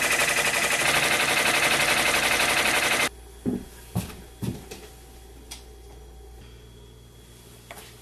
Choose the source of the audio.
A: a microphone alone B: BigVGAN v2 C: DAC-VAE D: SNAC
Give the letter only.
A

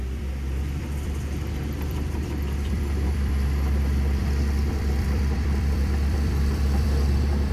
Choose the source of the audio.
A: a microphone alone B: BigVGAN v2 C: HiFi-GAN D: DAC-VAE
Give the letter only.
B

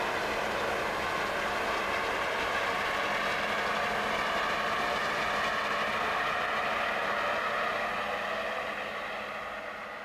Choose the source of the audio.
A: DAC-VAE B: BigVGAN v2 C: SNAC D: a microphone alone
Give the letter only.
D